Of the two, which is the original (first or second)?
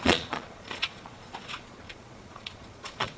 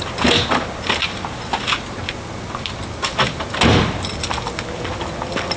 second